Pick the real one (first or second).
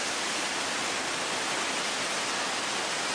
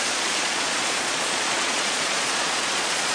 first